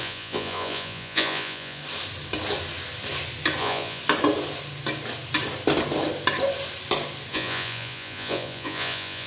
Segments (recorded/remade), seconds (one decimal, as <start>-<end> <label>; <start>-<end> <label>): 0.0-1.8 remade; 1.8-3.6 recorded; 3.6-4.0 remade; 4.0-7.3 recorded; 7.3-9.3 remade